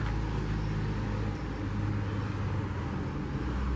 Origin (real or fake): real